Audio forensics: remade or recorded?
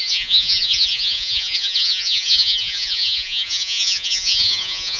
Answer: remade